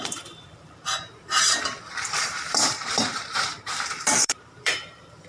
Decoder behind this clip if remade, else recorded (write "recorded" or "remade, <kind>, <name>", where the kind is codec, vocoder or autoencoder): remade, vocoder, BigVGAN v2